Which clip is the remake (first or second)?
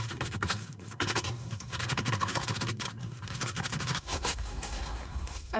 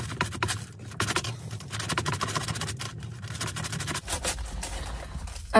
first